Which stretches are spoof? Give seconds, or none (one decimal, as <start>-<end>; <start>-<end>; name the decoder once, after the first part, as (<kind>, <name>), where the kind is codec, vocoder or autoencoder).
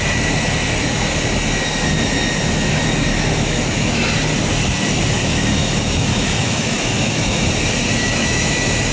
3.1-4.1 (autoencoder, DAC-VAE); 5.2-7.5; 8.0-8.5